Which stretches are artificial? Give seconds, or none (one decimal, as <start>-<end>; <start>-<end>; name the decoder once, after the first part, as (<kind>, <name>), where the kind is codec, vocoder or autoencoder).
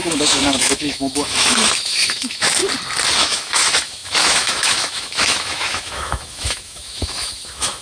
0.0-2.6 (autoencoder, DAC-VAE); 3.2-7.8